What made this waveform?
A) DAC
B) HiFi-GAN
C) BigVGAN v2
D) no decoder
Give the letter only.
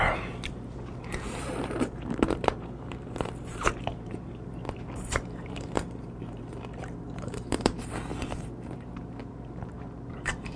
C